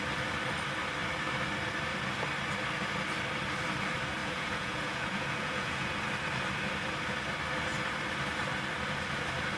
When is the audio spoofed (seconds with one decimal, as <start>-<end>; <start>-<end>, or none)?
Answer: 4.2-5.9